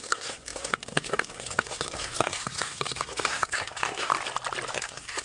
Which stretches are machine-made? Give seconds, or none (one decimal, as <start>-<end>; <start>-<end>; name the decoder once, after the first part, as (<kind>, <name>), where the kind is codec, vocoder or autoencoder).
0.0-4.1 (codec, SNAC); 4.7-5.2

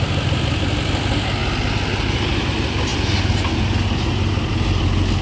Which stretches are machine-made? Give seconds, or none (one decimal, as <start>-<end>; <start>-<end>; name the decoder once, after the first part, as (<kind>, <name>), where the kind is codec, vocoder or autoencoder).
none